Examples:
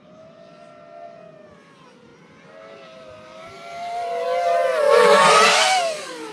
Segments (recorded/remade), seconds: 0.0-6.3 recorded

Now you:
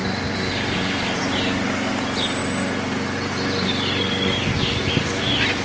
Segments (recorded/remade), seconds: 0.0-5.6 recorded

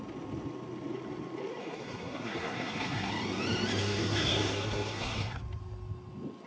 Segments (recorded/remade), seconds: 0.0-1.6 recorded; 1.6-3.1 remade; 3.1-3.8 recorded; 3.8-5.4 remade; 5.4-6.5 recorded

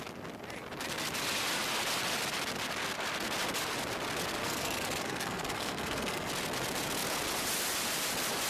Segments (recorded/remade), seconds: 0.0-4.4 recorded; 4.4-6.3 remade; 6.3-8.5 recorded

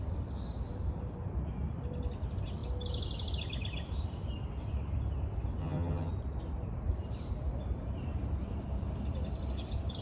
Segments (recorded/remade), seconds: 0.0-5.6 recorded; 5.6-6.1 remade; 6.1-10.0 recorded

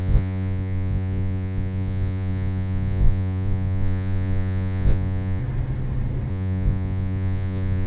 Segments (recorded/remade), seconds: 0.0-5.4 remade; 5.4-6.3 recorded; 6.3-7.9 remade

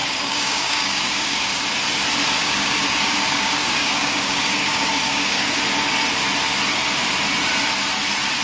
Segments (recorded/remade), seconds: 0.0-1.6 remade; 1.6-2.4 recorded; 2.4-5.6 remade; 5.6-8.4 recorded